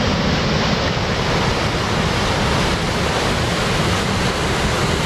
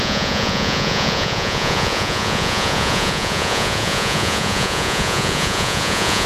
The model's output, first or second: second